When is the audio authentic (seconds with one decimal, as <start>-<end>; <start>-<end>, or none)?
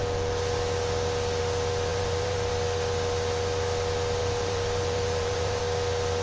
0.0-1.9; 2.5-4.2; 5.6-6.2